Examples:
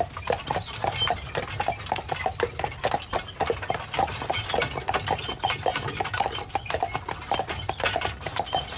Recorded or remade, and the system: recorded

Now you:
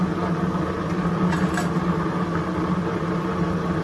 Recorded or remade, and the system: recorded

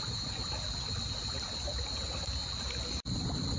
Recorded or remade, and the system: recorded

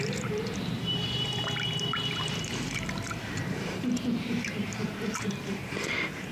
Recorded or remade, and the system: remade, vocoder, BigVGAN v2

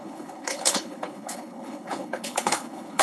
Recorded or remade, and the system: remade, codec, HILCodec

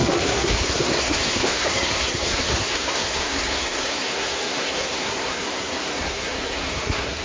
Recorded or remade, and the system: remade, codec, SNAC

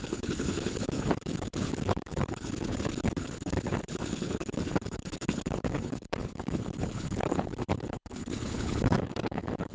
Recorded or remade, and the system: remade, codec, HILCodec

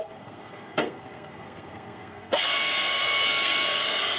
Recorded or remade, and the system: remade, codec, SNAC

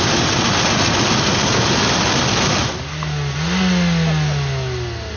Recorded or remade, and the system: recorded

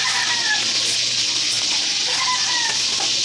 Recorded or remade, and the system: recorded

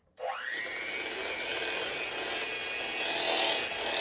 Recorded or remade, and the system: recorded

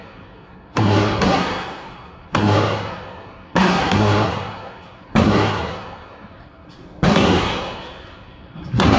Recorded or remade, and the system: remade, codec, SNAC